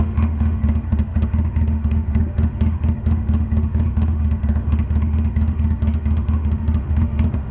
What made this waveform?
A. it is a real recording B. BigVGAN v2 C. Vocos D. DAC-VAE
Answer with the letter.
D